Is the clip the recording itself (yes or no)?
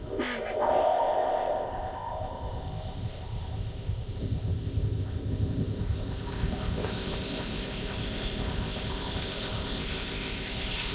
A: no